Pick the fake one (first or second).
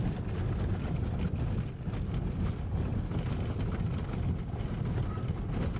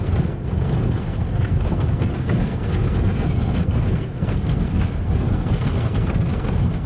second